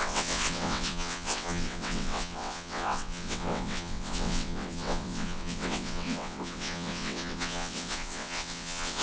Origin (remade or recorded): remade